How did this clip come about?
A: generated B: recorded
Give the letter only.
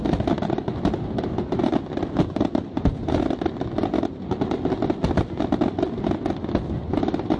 B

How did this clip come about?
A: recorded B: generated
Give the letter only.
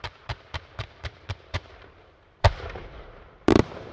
B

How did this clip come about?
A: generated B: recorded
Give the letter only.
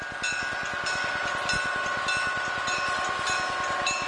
B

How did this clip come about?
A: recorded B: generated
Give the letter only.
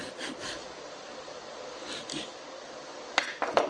A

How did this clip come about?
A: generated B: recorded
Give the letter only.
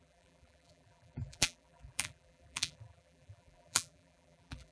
A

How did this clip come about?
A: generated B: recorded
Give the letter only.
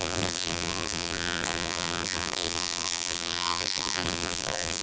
A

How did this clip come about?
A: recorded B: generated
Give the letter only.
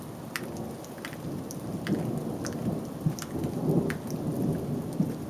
A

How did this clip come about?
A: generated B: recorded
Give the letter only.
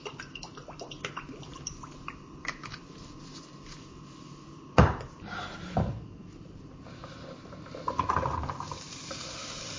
A